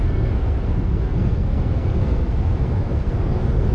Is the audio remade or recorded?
remade